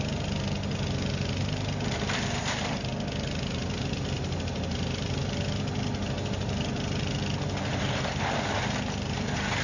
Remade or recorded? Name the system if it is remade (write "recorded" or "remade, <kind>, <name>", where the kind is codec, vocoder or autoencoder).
recorded